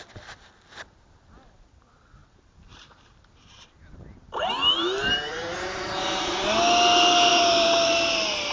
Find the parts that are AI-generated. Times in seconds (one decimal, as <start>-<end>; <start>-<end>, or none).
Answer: 2.2-6.3; 7.3-7.9